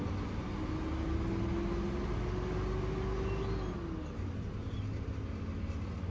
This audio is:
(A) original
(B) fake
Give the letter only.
A